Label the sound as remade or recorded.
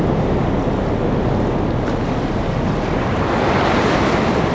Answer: recorded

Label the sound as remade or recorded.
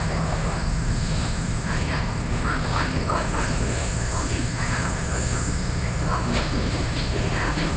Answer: remade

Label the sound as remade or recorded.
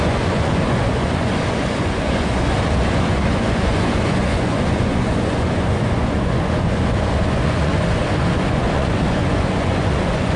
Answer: remade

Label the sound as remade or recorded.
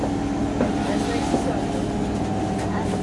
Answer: recorded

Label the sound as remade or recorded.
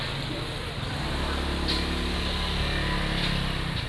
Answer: recorded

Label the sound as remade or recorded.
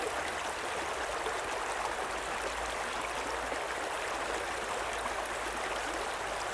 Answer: recorded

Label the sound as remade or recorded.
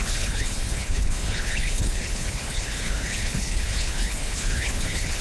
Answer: remade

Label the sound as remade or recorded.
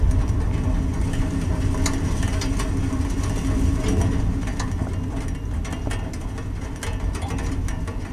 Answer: recorded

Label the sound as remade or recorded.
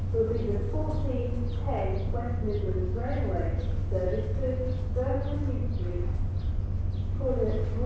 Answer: recorded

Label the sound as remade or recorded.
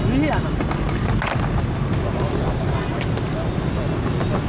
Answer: recorded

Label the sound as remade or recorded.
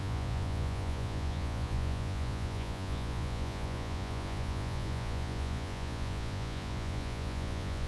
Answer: remade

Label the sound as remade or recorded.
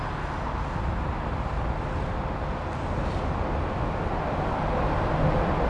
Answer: recorded